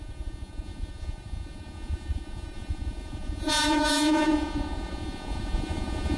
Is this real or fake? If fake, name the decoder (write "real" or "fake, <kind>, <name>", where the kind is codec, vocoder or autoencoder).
fake, vocoder, Vocos